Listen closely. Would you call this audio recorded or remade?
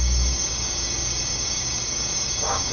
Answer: remade